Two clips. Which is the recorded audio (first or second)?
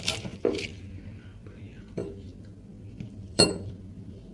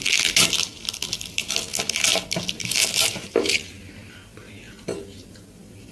second